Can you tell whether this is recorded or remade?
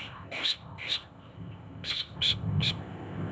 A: remade